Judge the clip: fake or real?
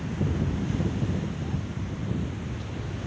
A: real